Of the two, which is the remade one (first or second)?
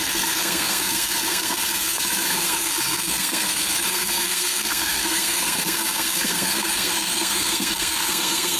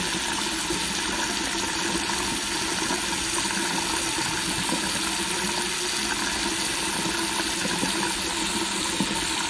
first